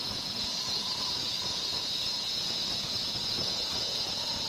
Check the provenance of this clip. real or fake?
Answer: fake